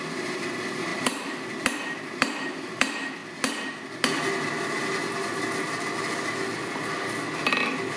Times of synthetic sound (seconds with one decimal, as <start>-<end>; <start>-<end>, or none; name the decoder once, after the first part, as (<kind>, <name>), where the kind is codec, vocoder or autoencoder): 0.0-3.2 (vocoder, BigVGAN v2)